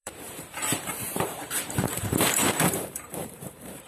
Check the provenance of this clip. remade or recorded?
remade